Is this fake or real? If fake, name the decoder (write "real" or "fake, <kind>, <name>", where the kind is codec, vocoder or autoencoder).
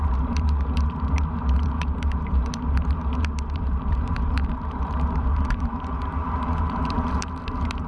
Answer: fake, vocoder, BigVGAN v2